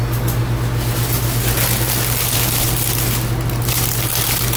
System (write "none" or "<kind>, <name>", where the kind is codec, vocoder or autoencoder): none